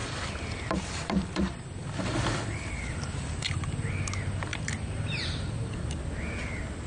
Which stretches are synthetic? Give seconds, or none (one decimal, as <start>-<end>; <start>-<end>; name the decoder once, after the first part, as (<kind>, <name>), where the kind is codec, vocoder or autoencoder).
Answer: 0.0-4.1 (vocoder, BigVGAN v2); 4.5-5.9